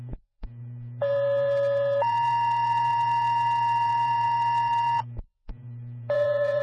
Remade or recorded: remade